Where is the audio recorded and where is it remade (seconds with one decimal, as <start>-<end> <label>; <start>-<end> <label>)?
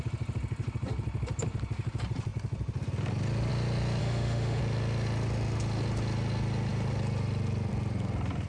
0.0-4.0 recorded; 4.0-4.6 remade; 4.6-8.5 recorded